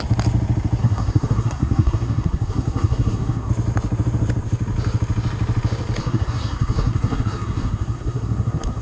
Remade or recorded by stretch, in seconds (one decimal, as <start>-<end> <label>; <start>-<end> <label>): 0.0-0.8 recorded; 0.8-3.5 remade; 3.5-6.0 recorded; 6.0-8.8 remade